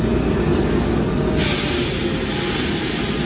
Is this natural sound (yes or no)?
yes